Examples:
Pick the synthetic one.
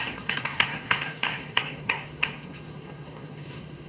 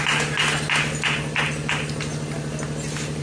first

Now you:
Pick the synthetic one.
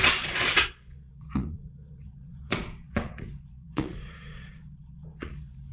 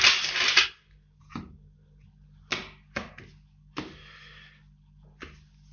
first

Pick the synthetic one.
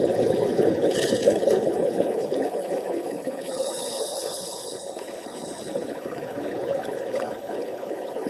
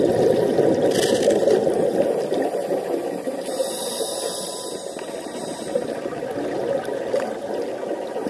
first